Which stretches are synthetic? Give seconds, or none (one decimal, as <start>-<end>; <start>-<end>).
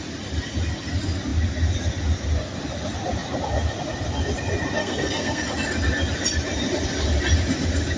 4.8-5.4